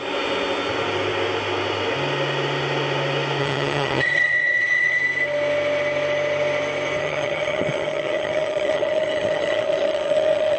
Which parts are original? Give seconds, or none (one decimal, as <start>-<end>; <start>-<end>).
0.0-3.4; 5.0-7.0